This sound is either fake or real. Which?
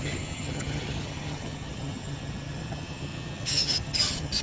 fake